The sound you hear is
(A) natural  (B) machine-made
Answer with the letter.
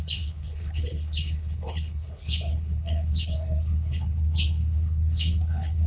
B